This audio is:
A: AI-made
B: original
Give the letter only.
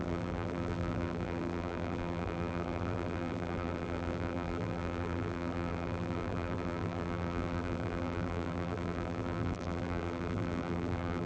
A